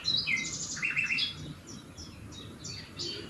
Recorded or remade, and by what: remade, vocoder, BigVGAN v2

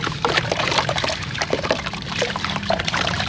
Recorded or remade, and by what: remade, vocoder, BigVGAN v2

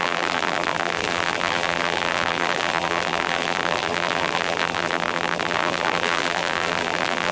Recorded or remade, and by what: remade, vocoder, BigVGAN v2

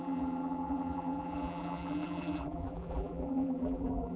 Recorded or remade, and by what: remade, vocoder, BigVGAN v2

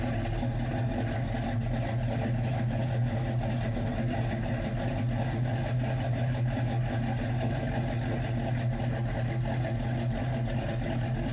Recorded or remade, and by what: recorded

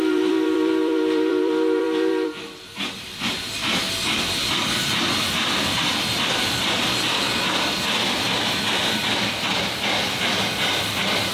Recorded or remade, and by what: remade, vocoder, BigVGAN v2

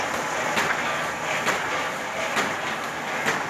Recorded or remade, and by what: recorded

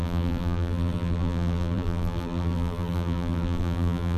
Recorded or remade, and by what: remade, vocoder, BigVGAN v2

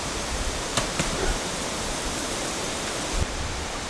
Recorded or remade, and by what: remade, vocoder, BigVGAN v2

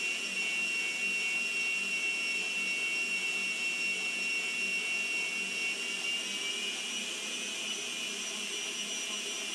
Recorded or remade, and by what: recorded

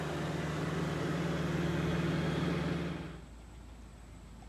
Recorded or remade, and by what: recorded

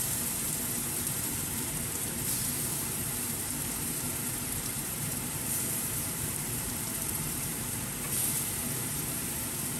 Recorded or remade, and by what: remade, vocoder, BigVGAN v2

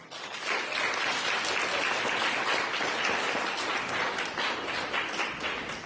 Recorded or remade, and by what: remade, vocoder, BigVGAN v2